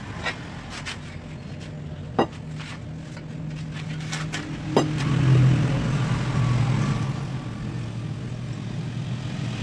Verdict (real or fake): real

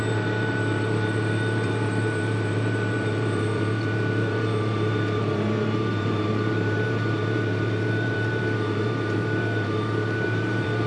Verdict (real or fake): fake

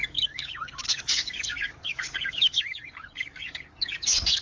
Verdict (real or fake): fake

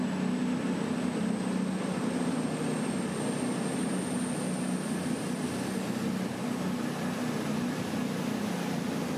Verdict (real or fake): real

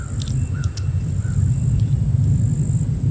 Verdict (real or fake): real